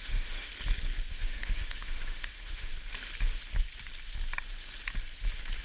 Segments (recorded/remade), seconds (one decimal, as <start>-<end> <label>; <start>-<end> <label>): 0.0-0.5 remade; 0.5-1.1 recorded; 1.1-2.7 remade; 2.7-5.6 recorded